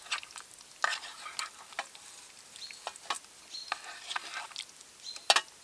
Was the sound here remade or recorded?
recorded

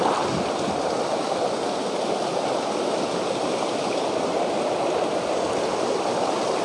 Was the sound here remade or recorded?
recorded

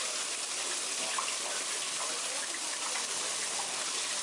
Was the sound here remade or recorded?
recorded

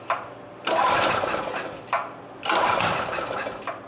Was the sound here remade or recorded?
recorded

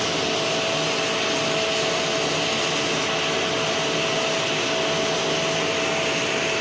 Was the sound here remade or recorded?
recorded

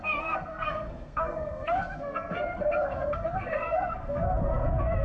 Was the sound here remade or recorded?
remade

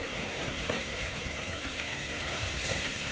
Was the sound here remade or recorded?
remade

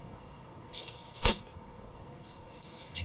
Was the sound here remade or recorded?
remade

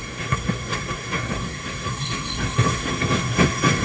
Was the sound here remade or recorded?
remade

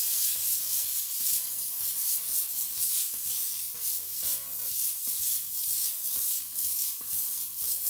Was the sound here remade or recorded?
remade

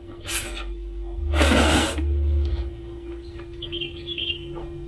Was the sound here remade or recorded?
remade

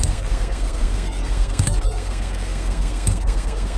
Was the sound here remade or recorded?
remade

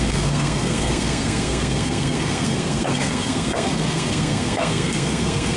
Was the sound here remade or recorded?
remade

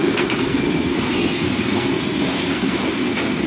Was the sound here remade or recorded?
remade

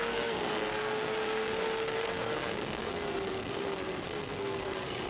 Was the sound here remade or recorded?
remade